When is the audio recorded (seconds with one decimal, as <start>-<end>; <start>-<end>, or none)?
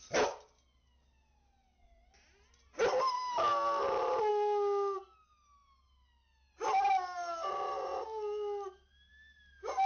0.0-9.9